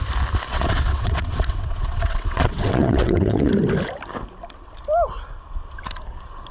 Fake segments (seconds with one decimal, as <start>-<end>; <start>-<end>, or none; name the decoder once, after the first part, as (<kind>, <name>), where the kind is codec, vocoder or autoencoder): 0.5-3.5 (vocoder, WaveNeXt)